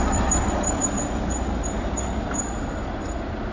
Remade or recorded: recorded